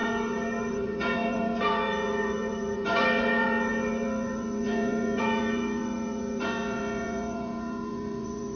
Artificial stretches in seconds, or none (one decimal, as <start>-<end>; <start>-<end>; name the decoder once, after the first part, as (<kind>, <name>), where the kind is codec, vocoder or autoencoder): 0.0-8.6 (vocoder, Vocos)